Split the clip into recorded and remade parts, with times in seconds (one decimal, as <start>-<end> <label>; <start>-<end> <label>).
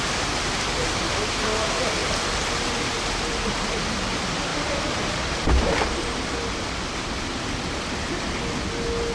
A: 0.0-4.5 recorded; 4.5-6.3 remade; 6.3-9.1 recorded